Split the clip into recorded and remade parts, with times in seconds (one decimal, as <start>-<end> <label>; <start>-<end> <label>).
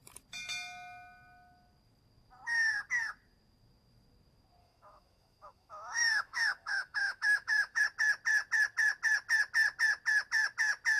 0.0-4.6 recorded; 4.6-7.8 remade; 7.8-11.0 recorded